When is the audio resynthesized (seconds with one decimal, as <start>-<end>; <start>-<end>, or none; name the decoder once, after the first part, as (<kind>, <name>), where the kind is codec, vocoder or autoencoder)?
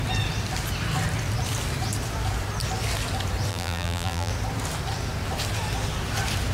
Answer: 3.5-4.3 (vocoder, BigVGAN v2)